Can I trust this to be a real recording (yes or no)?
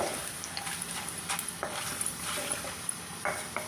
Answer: yes